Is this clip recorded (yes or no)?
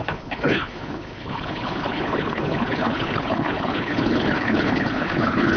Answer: no